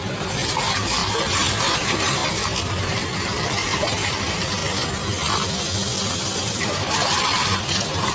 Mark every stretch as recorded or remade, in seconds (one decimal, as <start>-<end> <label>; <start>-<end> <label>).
0.0-2.2 remade; 2.2-2.7 recorded; 2.7-4.6 remade; 4.6-6.5 recorded; 6.5-8.1 remade